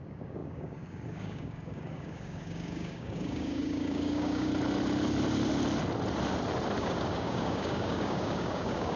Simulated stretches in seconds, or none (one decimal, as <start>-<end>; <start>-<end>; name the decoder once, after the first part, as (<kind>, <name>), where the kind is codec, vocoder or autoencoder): 0.0-4.5 (codec, DAC); 6.8-9.0